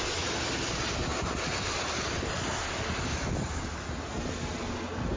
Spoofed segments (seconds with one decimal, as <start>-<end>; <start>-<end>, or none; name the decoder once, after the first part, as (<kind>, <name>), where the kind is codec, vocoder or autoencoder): none